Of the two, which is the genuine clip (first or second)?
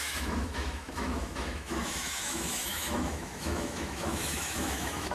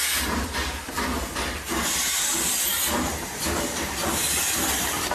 second